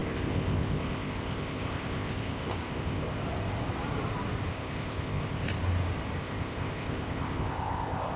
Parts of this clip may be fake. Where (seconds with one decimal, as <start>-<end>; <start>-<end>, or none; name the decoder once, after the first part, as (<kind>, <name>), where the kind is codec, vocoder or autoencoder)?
0.0-3.2 (codec, ZipCodec); 4.5-5.5; 6.2-8.2